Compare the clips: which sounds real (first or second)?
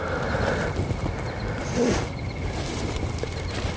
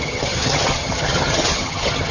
first